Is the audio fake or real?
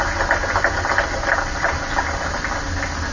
real